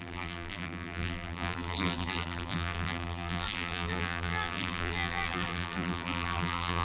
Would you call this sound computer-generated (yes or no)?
yes